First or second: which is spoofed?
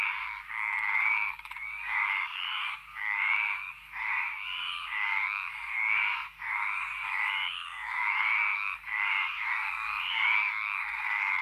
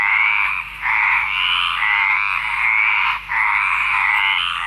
first